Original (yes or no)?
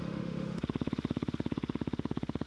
no